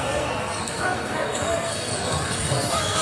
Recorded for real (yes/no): no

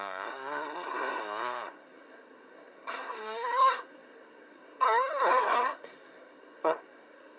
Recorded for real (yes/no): no